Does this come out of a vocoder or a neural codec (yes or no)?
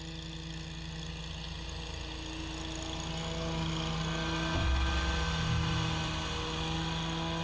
no